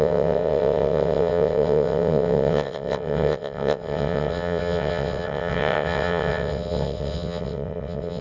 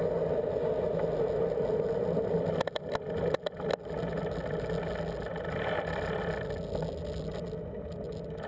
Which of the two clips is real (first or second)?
second